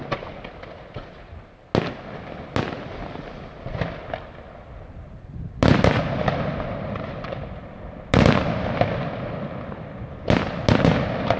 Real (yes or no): yes